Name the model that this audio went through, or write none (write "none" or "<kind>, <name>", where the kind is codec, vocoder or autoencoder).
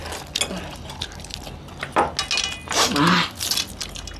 none